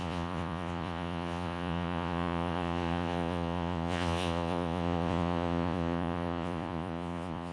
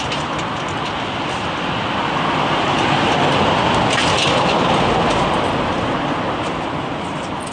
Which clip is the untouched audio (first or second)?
second